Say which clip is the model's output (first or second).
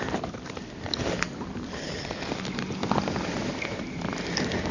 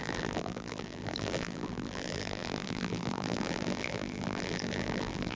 second